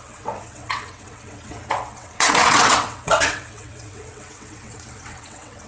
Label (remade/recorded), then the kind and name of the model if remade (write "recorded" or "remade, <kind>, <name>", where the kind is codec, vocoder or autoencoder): remade, vocoder, WaveNeXt